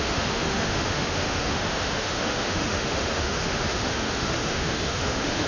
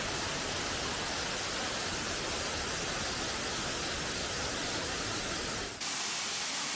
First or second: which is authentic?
second